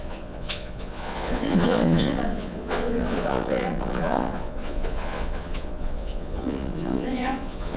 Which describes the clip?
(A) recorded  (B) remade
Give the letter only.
B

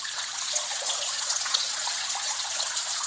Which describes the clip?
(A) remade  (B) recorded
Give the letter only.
A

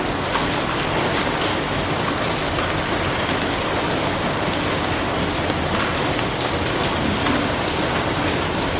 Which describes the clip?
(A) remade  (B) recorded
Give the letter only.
B